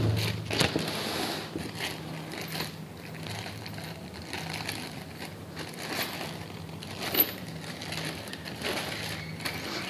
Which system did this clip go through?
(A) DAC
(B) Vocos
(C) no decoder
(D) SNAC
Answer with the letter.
C